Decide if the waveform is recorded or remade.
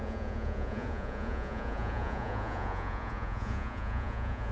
remade